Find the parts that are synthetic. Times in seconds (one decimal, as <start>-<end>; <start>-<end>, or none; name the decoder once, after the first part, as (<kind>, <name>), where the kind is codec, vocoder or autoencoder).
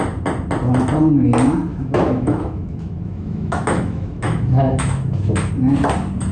1.7-5.5 (autoencoder, DAC-VAE)